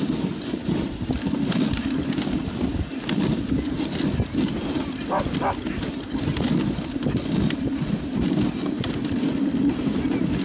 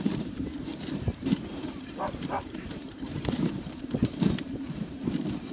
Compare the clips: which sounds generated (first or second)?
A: second